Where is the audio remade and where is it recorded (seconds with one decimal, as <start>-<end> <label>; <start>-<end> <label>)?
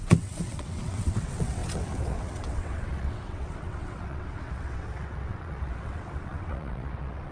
0.0-7.3 remade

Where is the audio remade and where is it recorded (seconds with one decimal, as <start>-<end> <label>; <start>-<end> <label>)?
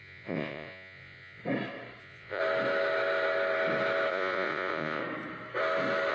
0.0-1.4 remade; 1.4-2.0 recorded; 2.0-2.4 remade; 2.4-4.1 recorded; 4.1-5.0 remade; 5.0-6.1 recorded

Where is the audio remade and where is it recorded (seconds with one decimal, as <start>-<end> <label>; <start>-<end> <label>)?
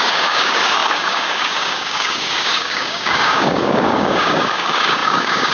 0.0-5.5 remade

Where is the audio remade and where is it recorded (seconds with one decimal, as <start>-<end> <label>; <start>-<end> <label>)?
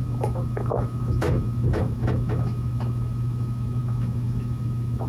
0.0-5.1 remade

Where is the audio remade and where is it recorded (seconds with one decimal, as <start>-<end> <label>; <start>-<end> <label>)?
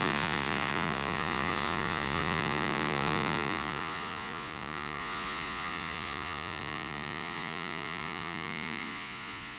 0.0-9.6 remade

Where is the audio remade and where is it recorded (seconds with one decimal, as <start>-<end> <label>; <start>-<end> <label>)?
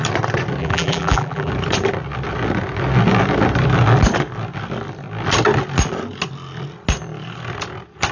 0.0-0.6 recorded; 0.6-1.5 remade; 1.5-8.1 recorded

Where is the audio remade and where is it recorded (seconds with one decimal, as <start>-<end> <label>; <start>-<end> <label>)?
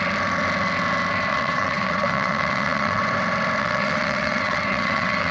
0.0-1.3 recorded; 1.3-3.0 remade; 3.0-3.6 recorded; 3.6-5.3 remade